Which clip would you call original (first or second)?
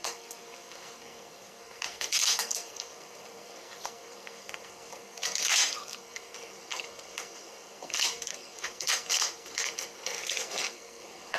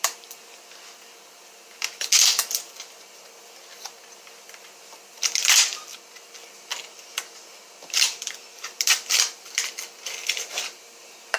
second